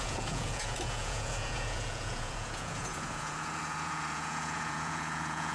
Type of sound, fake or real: fake